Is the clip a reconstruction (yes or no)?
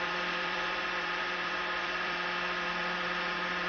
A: yes